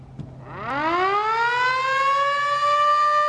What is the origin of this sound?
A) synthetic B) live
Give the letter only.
B